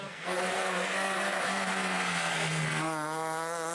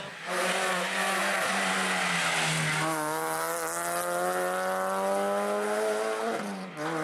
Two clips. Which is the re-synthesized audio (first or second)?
first